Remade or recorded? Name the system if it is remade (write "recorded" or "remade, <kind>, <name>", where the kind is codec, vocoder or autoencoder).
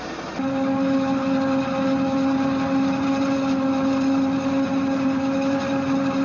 recorded